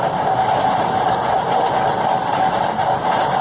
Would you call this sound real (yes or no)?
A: yes